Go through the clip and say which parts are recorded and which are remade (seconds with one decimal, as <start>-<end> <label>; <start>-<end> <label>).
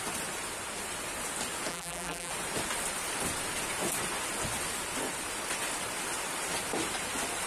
0.0-1.7 recorded; 1.7-2.3 remade; 2.3-7.5 recorded